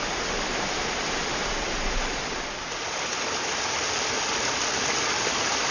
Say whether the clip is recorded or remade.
recorded